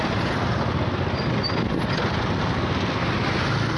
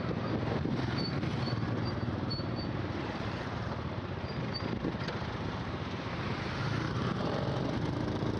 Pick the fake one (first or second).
second